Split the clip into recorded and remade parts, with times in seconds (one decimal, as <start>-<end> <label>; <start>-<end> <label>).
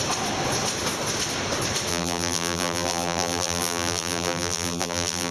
0.0-1.9 recorded; 1.9-5.3 remade